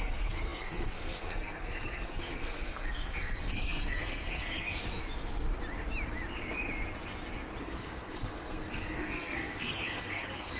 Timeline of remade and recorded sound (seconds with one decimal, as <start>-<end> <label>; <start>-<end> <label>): 0.0-5.0 remade; 5.0-7.6 recorded; 7.6-10.6 remade